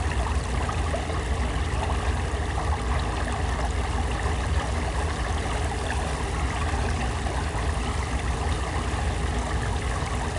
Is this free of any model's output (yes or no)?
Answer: yes